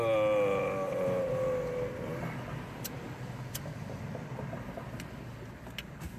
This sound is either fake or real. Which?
real